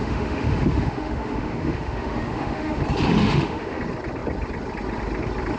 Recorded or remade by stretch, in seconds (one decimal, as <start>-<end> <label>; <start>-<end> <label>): 0.0-2.8 remade; 2.8-3.2 recorded; 3.2-3.8 remade; 3.8-5.6 recorded